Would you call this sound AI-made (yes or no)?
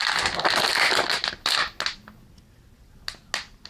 no